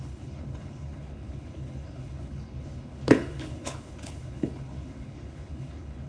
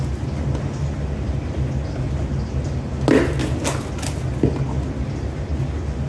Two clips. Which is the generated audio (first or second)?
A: first